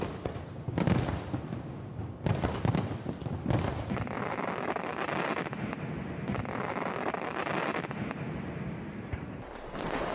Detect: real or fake real